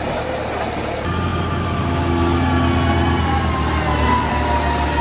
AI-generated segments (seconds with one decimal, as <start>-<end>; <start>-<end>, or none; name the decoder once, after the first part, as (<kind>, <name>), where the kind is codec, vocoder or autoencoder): none